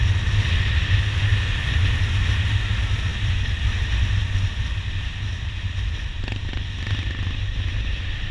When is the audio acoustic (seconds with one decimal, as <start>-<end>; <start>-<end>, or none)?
0.0-8.3